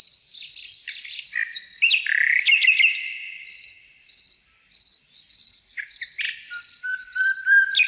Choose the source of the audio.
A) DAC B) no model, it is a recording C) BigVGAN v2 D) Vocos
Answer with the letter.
B